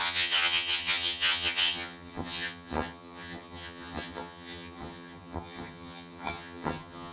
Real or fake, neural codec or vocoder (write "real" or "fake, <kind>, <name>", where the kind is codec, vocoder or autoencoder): fake, vocoder, HiFi-GAN